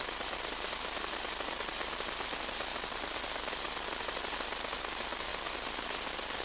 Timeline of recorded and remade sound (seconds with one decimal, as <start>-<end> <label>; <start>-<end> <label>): 0.0-6.4 recorded